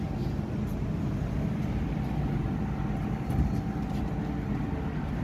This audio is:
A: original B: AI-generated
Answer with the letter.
A